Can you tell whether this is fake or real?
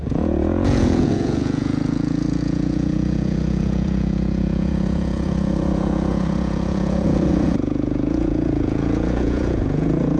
fake